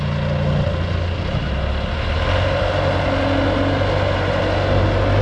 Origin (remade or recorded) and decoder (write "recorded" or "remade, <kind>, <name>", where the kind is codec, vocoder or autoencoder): recorded